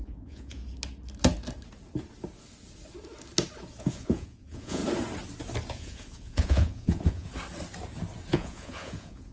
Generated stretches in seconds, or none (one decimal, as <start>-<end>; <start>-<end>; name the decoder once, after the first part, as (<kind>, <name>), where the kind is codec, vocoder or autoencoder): 0.0-0.6 (vocoder, Vocos); 3.8-4.8; 5.7-7.3; 8.3-9.3